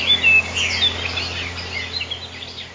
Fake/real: real